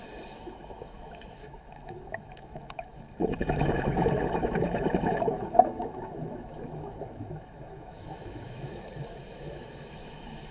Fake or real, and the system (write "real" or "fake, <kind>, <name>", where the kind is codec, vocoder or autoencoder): fake, autoencoder, DAC-VAE